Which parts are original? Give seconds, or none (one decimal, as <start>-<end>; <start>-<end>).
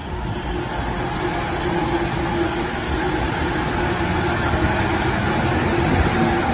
0.0-6.5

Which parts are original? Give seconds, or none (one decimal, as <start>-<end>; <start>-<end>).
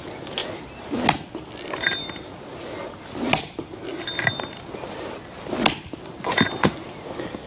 0.0-7.5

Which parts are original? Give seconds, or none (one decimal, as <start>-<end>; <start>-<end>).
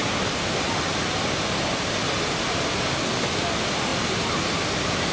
0.0-5.1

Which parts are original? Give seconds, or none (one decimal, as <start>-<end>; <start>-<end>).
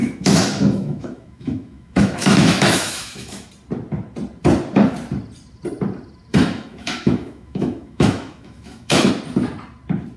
3.5-6.3; 9.1-10.2